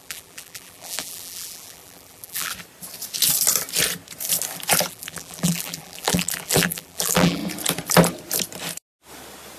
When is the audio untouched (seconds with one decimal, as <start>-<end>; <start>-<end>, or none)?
2.5-4.9; 7.4-9.6